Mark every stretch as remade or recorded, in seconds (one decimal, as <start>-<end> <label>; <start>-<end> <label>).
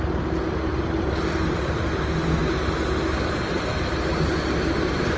0.0-2.4 remade; 2.4-3.3 recorded; 3.3-4.1 remade; 4.1-4.7 recorded; 4.7-5.2 remade